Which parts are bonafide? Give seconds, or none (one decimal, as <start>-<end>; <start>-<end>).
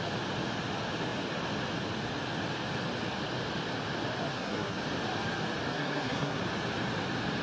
0.0-4.3; 4.8-5.7; 6.4-7.4